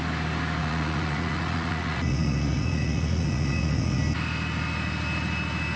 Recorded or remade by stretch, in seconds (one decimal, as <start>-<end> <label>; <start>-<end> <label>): 0.0-0.6 recorded; 0.6-4.0 remade; 4.0-5.8 recorded